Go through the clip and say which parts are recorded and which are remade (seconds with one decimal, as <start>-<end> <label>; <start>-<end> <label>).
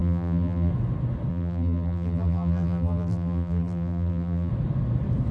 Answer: 0.0-0.7 remade; 0.7-1.3 recorded; 1.3-4.5 remade; 4.5-5.3 recorded